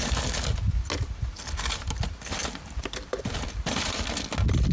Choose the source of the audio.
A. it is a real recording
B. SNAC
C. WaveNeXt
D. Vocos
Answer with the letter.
A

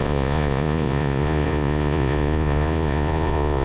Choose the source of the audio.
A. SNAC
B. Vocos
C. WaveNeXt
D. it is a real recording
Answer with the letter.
B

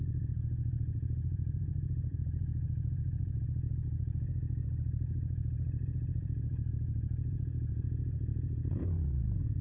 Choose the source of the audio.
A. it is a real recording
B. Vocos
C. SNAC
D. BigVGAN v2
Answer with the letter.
B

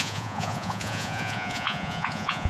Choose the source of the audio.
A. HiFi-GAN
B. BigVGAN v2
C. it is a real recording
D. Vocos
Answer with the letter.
D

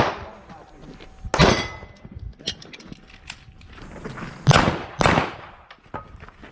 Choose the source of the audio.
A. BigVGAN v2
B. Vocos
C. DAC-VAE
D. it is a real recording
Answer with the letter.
D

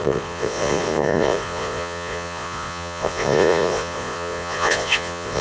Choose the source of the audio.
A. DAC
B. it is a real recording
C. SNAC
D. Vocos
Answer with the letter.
D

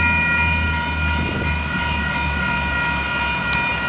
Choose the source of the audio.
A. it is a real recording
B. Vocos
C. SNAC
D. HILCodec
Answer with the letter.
A